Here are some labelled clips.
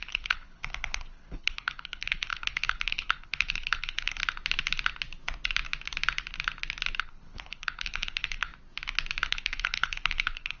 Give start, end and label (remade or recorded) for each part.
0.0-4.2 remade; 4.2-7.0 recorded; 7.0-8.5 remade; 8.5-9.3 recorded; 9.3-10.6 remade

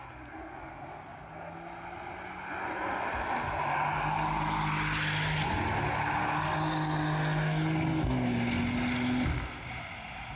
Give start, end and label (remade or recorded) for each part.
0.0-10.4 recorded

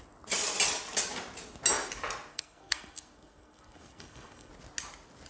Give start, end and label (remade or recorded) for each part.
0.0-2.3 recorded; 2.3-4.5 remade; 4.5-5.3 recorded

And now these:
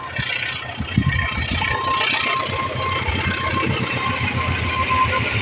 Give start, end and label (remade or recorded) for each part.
0.0-5.4 recorded

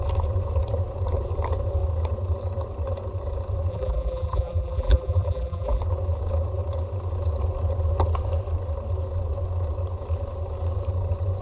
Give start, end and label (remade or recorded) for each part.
0.0-3.7 recorded; 3.7-5.8 remade; 5.8-11.4 recorded

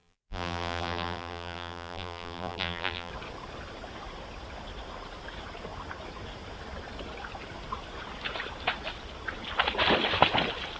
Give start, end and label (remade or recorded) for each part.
0.0-3.1 remade; 3.1-10.8 recorded